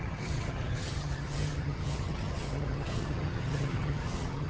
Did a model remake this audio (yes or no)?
yes